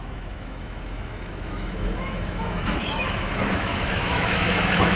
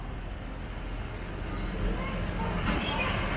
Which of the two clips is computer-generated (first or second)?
first